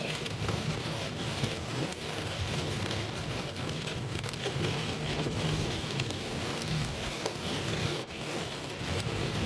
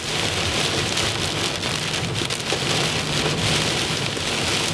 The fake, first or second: first